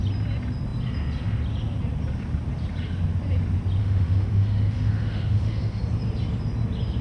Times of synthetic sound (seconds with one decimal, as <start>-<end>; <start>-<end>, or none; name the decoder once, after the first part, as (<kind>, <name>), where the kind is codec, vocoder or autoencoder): 3.8-5.8 (autoencoder, DAC-VAE)